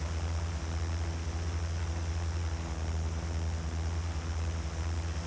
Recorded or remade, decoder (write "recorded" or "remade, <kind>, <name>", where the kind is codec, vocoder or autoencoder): recorded